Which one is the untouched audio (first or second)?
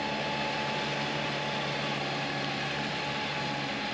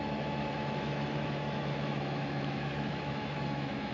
first